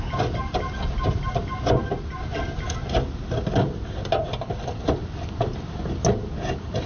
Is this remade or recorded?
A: recorded